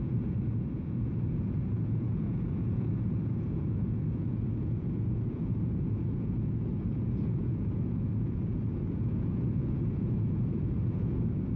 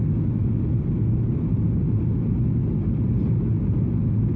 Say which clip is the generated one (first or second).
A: first